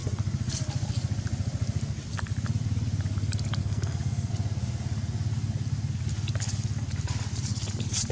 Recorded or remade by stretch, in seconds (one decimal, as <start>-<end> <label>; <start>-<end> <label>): 0.0-3.6 recorded; 3.6-4.3 remade; 4.3-8.1 recorded